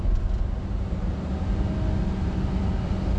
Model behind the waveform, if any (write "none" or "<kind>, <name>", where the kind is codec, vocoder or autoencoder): none